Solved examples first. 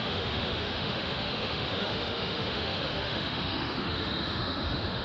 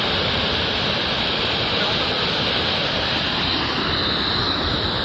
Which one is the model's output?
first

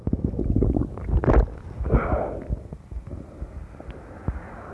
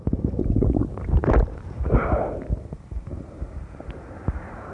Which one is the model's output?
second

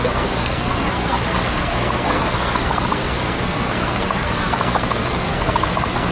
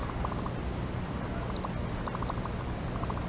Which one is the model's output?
first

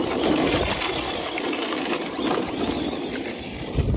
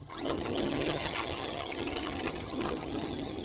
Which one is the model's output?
second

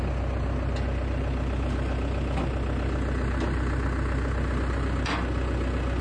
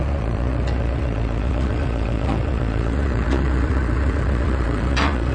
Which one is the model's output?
second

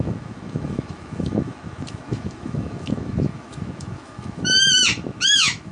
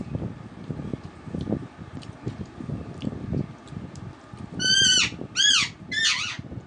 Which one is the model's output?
first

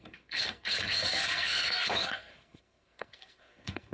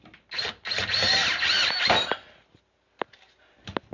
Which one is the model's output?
first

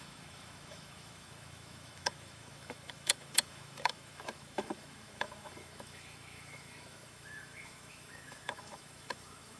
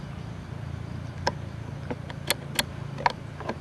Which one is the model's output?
first